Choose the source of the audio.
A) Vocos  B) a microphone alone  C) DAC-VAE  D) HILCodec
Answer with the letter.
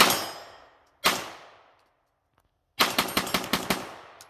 B